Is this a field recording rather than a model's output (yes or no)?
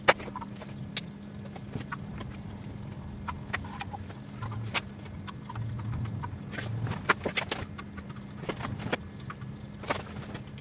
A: yes